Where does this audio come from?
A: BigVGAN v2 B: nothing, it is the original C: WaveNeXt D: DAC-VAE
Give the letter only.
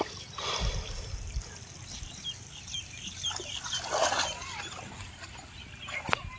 B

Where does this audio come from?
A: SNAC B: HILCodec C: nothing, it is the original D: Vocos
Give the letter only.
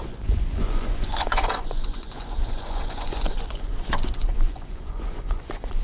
D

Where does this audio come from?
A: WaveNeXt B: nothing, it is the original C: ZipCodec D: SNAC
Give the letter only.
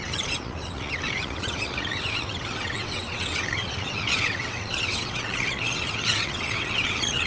A